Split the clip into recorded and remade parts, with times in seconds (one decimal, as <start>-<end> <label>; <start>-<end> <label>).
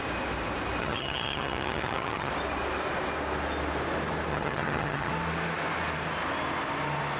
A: 0.0-0.8 recorded; 0.8-2.3 remade; 2.3-4.3 recorded; 4.3-5.1 remade; 5.1-7.2 recorded